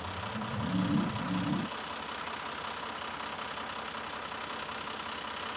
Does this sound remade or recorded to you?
recorded